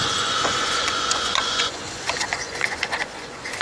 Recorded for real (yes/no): no